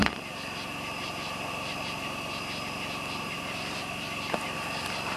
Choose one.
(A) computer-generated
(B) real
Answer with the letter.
B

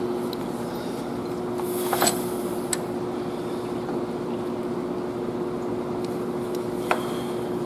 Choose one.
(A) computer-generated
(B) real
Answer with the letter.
B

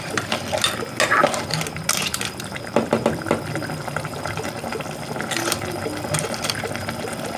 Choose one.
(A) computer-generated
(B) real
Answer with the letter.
B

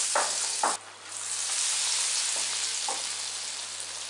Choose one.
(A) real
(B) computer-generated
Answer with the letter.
A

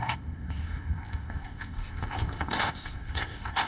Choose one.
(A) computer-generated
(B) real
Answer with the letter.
A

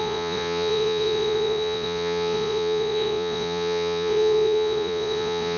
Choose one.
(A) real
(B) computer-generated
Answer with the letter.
B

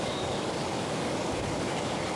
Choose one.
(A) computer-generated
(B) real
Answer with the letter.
A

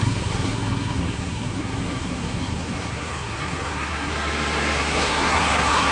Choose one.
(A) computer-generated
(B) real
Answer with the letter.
A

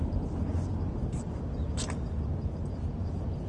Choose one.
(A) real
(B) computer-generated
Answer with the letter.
A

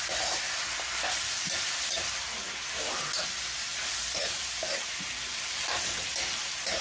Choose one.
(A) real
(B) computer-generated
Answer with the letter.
B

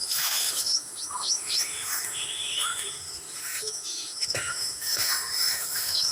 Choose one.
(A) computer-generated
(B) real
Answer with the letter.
A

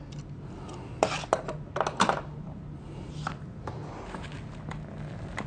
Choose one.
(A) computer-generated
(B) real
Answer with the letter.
B